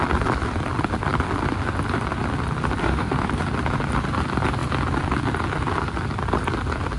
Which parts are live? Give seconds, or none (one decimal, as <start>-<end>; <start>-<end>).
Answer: 0.0-2.8; 3.3-7.0